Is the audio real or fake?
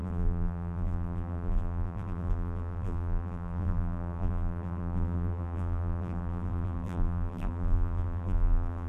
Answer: fake